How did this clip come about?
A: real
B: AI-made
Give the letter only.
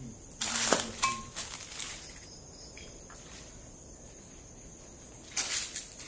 A